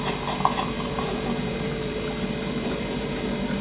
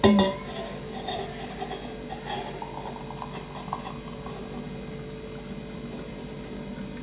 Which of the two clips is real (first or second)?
second